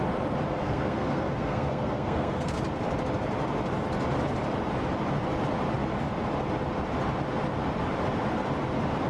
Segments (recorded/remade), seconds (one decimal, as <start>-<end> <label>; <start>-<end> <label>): 0.0-0.6 recorded; 0.6-2.6 remade; 2.6-9.1 recorded